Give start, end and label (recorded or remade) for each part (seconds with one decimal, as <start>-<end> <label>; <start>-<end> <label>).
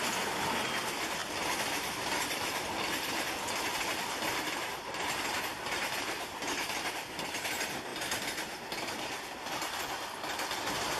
0.0-11.0 recorded